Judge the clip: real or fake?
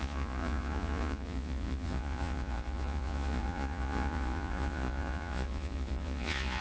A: fake